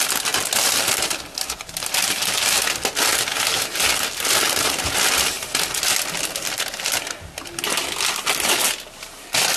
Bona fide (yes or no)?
yes